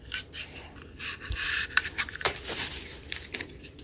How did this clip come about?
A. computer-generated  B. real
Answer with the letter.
A